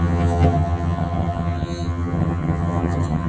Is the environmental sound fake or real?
fake